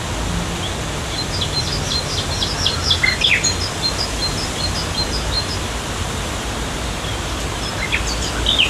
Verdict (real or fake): real